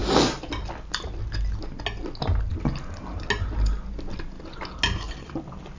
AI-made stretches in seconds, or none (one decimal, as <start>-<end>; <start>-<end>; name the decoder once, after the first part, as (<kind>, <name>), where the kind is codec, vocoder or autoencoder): none